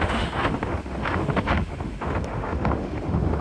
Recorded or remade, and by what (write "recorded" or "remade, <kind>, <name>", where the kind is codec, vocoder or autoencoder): remade, autoencoder, DAC-VAE